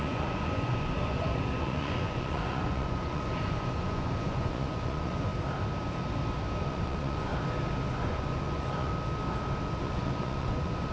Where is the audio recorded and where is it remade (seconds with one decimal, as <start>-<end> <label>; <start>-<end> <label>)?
0.0-5.3 remade; 5.3-6.6 recorded; 6.6-7.3 remade; 7.3-7.9 recorded; 7.9-8.9 remade; 8.9-9.8 recorded; 9.8-10.9 remade